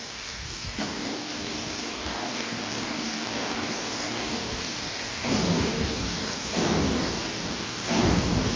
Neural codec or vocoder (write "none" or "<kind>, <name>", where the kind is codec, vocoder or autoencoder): codec, DAC